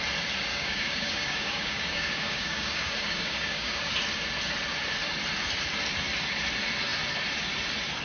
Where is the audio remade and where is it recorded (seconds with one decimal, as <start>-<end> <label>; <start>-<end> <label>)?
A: 0.0-0.5 recorded; 0.5-3.9 remade; 3.9-8.0 recorded